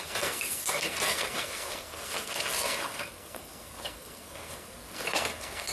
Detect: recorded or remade remade